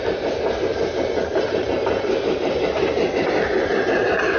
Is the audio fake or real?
fake